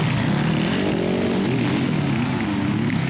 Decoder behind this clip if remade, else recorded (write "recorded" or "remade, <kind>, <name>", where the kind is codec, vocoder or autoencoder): recorded